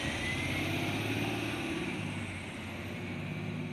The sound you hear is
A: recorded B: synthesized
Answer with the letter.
A